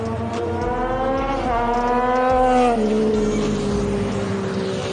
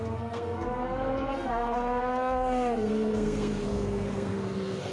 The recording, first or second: first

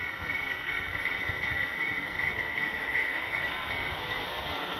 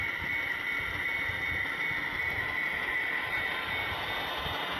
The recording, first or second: second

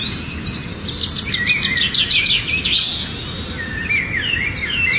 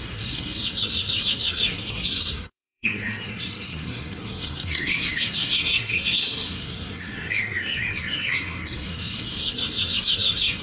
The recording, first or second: first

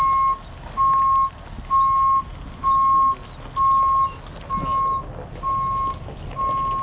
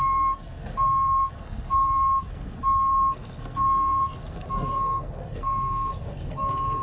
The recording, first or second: first